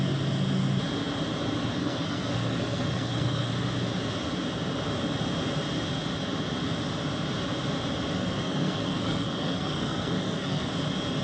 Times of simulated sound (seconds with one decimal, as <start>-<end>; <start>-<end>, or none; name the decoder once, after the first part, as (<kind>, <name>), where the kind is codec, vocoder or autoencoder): 1.8-3.5 (codec, SNAC); 8.1-10.7